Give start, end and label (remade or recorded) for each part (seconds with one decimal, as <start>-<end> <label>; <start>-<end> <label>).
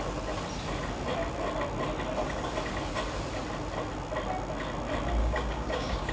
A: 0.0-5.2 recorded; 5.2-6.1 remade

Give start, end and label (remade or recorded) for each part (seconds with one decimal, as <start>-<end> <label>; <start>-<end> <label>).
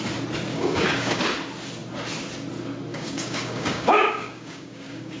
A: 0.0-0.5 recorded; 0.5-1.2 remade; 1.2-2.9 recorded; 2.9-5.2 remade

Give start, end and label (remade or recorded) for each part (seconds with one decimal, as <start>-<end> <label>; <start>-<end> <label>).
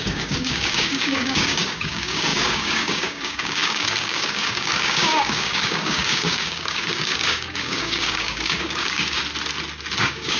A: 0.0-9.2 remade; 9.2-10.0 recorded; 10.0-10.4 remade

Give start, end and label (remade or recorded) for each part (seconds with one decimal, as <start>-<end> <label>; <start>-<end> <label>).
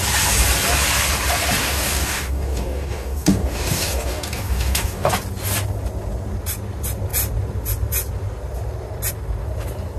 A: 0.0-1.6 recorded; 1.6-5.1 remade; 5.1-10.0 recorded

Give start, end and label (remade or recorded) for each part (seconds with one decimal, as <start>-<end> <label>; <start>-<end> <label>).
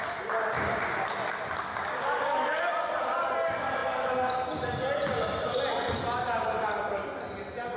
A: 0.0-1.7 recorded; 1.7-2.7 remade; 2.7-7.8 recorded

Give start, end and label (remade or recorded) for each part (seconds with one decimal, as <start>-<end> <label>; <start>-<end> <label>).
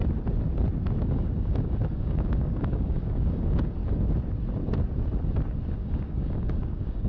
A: 0.0-1.0 recorded; 1.0-3.8 remade; 3.8-5.7 recorded; 5.7-7.1 remade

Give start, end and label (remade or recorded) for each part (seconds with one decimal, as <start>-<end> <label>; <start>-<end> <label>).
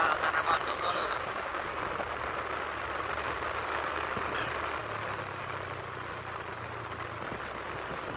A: 0.0-0.6 recorded; 0.6-1.7 remade; 1.7-8.2 recorded